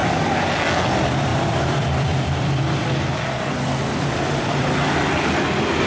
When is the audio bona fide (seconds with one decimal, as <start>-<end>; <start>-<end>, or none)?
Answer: 0.6-1.3; 4.8-5.9